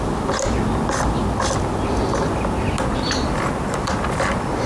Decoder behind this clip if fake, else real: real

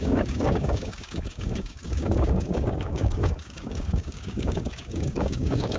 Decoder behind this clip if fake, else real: fake, codec, DAC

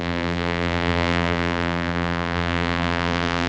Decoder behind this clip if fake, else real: fake, vocoder, BigVGAN v2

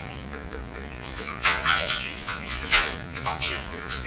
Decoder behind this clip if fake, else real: fake, vocoder, Vocos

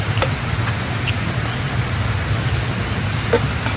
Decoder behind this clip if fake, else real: real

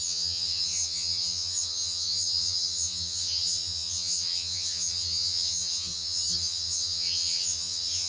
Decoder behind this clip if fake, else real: fake, vocoder, HiFi-GAN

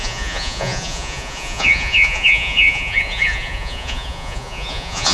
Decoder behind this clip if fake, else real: fake, vocoder, Vocos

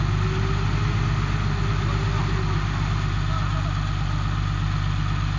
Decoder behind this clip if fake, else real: real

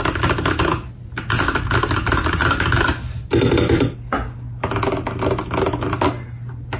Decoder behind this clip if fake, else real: real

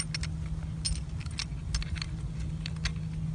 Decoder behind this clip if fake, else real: real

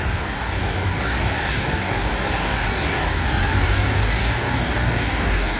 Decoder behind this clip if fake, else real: fake, codec, DAC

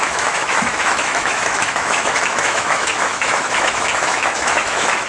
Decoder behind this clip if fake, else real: fake, autoencoder, DAC-VAE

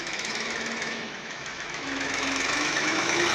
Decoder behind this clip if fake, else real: fake, autoencoder, DAC-VAE